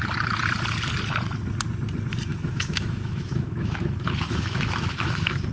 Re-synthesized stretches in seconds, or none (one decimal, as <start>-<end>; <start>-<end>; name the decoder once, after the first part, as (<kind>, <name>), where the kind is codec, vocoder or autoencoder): 2.3-5.5 (autoencoder, DAC-VAE)